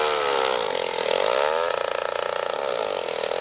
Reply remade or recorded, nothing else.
recorded